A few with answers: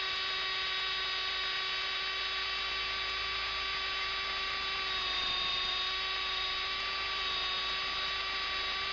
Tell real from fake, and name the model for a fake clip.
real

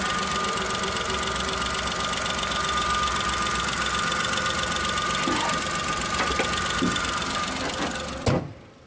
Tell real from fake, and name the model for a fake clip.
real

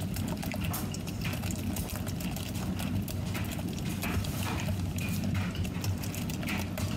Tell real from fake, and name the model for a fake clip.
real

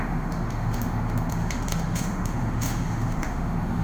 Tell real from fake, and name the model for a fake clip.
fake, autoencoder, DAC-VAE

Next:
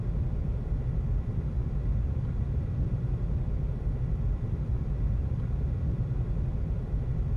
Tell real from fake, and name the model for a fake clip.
fake, vocoder, BigVGAN v2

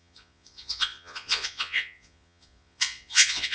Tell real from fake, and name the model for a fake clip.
fake, vocoder, Vocos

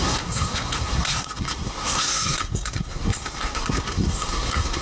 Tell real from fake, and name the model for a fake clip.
fake, codec, SNAC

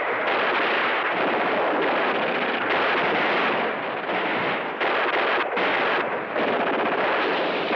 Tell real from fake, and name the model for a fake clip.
real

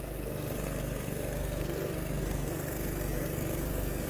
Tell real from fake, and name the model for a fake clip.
fake, codec, SNAC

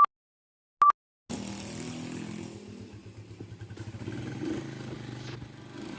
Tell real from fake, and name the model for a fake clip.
real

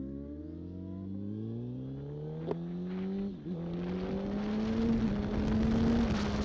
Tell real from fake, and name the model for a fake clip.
real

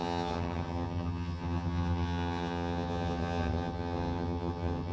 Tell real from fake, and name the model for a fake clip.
fake, vocoder, HiFi-GAN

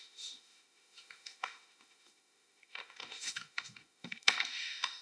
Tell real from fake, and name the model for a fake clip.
fake, autoencoder, DAC-VAE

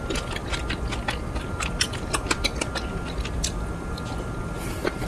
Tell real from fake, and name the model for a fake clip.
real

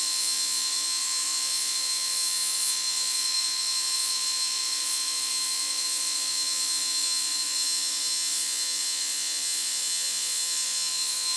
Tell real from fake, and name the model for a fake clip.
fake, vocoder, Vocos